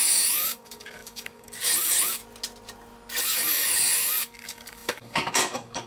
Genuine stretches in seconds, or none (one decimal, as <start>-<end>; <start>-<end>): 2.2-3.2